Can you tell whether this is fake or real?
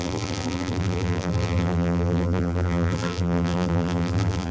fake